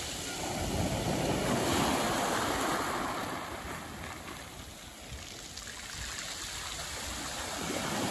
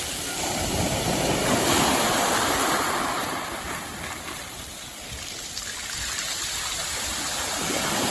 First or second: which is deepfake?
second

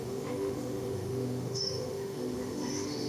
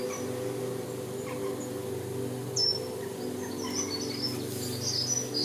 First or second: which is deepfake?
first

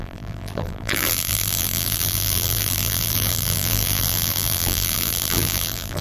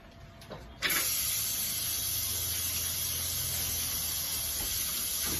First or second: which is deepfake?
first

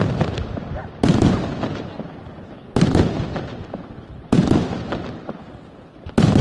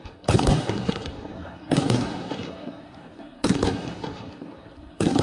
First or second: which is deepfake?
second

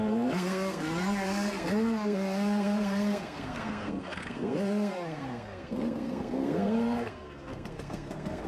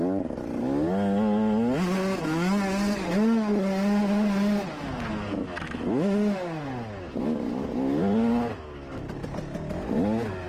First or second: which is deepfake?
first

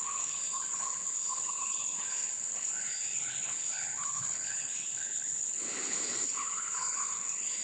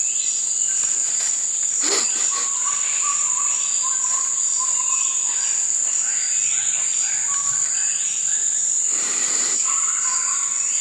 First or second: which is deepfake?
first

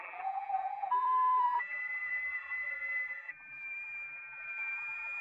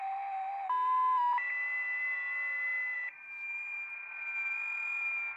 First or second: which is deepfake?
first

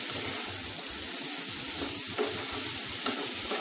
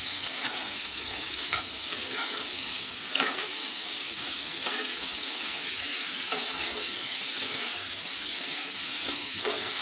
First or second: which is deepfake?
second